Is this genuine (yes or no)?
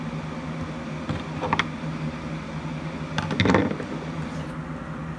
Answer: yes